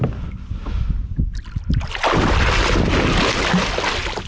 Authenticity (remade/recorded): recorded